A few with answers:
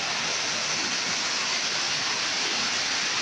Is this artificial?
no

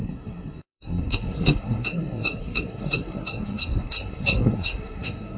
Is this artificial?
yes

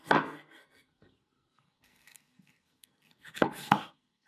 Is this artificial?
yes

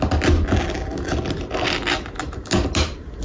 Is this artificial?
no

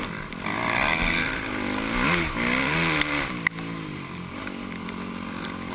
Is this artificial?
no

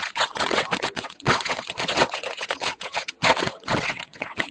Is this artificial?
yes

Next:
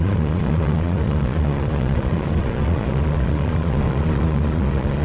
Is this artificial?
yes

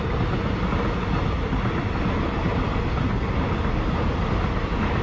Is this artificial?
no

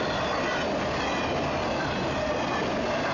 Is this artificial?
no